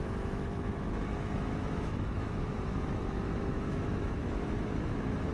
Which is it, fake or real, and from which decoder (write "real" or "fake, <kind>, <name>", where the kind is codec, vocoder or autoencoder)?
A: fake, autoencoder, DAC-VAE